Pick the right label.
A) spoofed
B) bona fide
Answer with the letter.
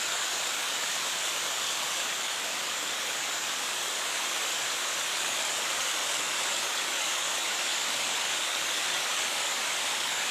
A